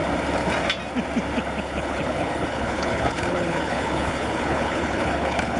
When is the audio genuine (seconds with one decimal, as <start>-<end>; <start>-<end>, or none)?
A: 0.0-1.6